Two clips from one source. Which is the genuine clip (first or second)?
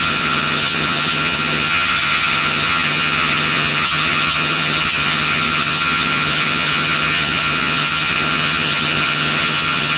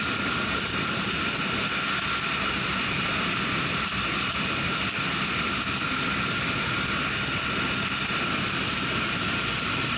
second